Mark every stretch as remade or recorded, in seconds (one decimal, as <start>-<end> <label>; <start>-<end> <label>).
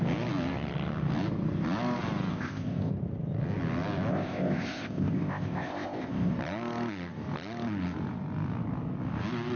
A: 0.0-2.3 recorded; 2.3-2.9 remade; 2.9-4.1 recorded; 4.1-6.3 remade; 6.3-9.6 recorded